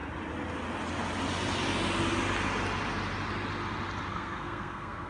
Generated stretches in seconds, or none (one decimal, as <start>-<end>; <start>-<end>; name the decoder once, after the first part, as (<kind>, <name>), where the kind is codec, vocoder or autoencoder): 4.1-5.1 (codec, SNAC)